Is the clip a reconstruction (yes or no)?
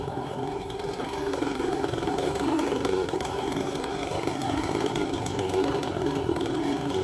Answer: yes